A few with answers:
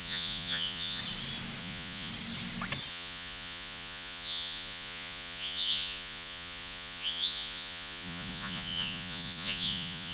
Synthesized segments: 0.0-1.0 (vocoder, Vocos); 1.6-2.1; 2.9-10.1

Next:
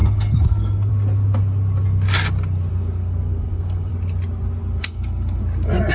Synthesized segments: 0.0-0.9 (codec, SNAC); 2.7-3.9; 4.8-5.4

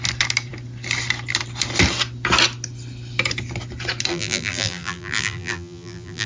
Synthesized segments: 4.1-6.3 (vocoder, BigVGAN v2)

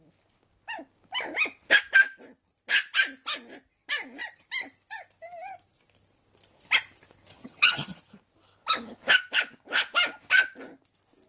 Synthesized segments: 7.3-8.0 (vocoder, HiFi-GAN)

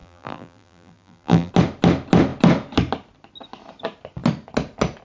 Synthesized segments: 0.0-1.5 (vocoder, BigVGAN v2)